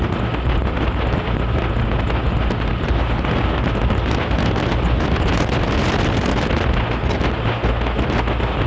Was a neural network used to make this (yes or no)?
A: no